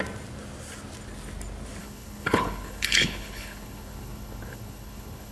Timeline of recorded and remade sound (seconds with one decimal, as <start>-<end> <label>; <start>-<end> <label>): 0.0-1.8 recorded; 1.8-5.3 remade